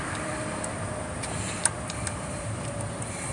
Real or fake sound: fake